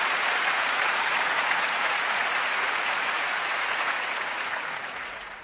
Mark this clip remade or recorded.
remade